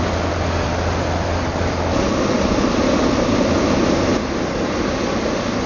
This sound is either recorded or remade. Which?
recorded